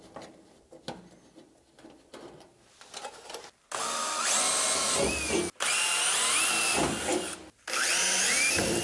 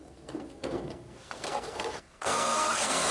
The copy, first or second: second